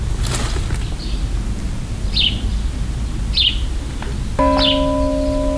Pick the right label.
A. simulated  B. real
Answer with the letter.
B